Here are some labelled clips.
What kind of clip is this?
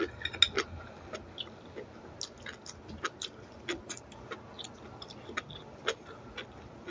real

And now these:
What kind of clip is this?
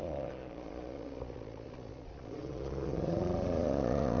fake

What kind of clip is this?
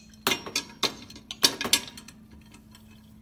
real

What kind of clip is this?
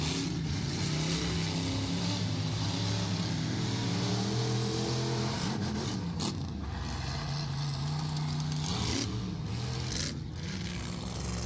real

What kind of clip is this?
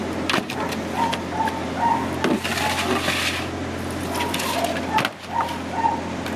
real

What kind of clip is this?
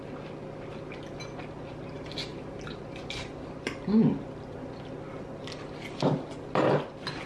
real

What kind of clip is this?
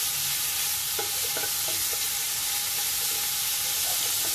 real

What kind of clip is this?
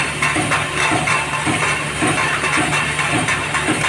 real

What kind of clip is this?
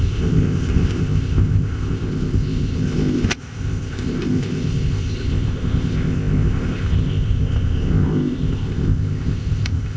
fake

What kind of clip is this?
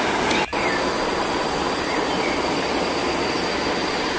real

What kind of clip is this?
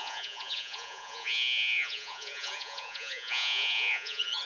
fake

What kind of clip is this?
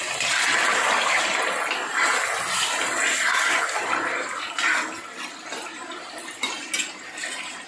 real